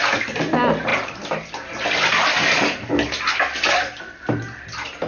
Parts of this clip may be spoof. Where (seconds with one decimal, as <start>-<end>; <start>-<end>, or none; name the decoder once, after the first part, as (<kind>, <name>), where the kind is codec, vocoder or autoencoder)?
none